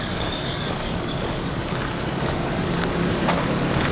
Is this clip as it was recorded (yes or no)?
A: no